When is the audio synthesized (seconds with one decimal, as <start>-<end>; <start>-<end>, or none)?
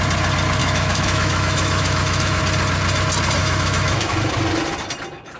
0.6-2.4; 3.4-4.3